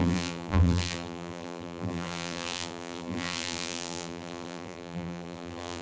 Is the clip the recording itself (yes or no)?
no